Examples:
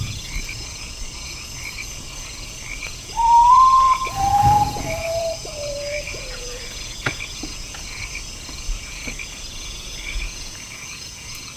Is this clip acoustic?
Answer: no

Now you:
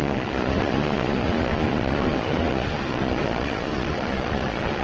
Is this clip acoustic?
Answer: no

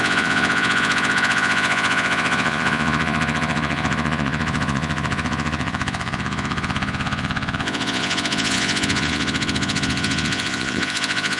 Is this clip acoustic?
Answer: no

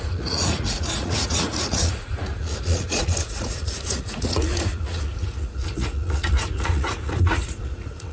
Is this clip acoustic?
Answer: no